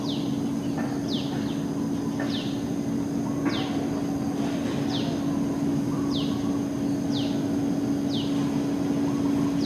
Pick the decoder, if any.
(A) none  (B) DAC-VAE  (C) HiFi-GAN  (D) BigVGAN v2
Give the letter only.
A